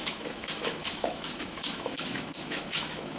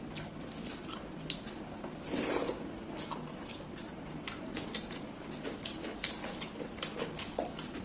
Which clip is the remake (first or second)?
first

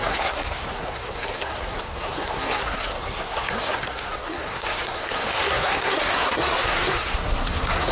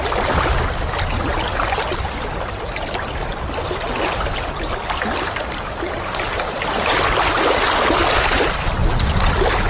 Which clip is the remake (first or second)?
first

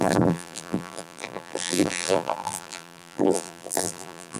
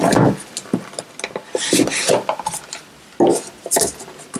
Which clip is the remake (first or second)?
first